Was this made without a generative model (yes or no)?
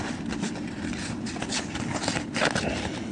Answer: yes